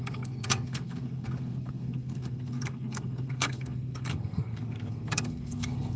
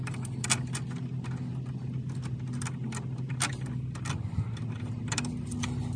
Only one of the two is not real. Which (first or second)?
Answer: first